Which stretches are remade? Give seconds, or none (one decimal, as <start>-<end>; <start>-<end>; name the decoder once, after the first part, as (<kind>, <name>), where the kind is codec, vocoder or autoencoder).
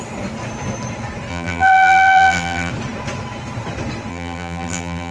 1.3-2.7 (vocoder, BigVGAN v2); 4.1-5.1